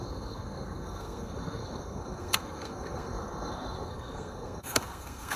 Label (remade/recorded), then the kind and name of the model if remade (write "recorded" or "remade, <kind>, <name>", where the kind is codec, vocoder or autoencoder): remade, codec, SNAC